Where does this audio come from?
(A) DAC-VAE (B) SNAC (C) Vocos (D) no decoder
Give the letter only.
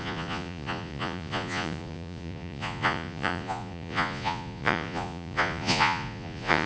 C